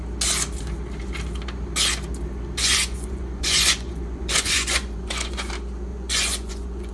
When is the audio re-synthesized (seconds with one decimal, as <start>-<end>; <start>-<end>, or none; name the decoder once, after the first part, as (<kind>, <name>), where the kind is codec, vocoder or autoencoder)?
2.6-5.5 (vocoder, Vocos); 5.9-6.9